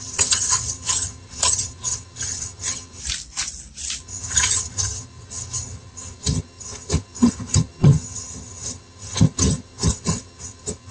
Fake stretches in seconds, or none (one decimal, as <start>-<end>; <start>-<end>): 0.0-3.0; 4.0-10.9